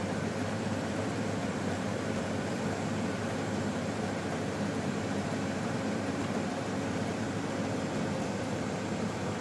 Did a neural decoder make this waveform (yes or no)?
yes